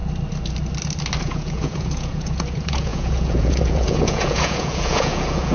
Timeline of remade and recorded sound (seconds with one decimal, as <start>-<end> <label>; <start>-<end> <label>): 0.0-1.2 recorded; 1.2-5.5 remade